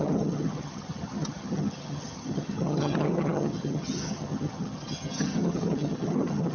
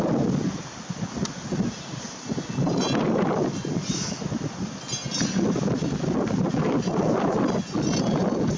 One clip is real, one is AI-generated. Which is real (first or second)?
second